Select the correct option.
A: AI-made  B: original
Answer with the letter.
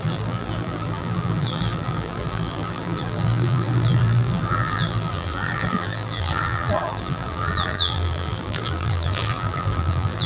A